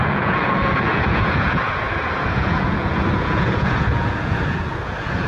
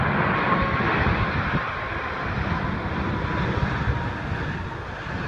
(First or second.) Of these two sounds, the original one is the second